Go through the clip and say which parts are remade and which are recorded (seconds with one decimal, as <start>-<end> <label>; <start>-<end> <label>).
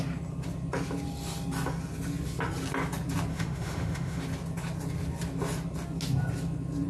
0.0-3.3 recorded; 3.3-4.2 remade; 4.2-6.9 recorded